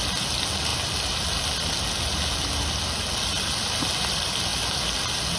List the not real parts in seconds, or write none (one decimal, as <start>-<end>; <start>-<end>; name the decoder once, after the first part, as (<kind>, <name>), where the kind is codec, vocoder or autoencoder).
none